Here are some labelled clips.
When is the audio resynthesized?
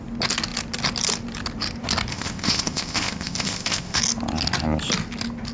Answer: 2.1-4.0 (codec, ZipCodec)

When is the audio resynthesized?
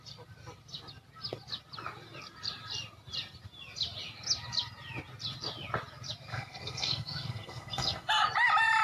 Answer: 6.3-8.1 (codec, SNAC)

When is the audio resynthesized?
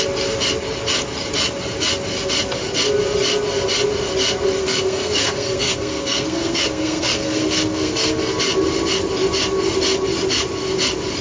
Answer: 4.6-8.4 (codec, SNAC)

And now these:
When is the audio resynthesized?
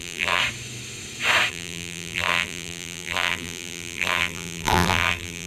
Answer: 0.0-0.4 (vocoder, BigVGAN v2); 1.5-5.5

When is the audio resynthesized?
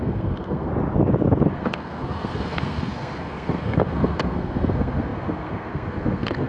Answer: 0.0-0.7 (codec, SNAC); 1.5-6.5